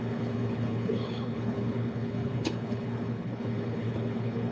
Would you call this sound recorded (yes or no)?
no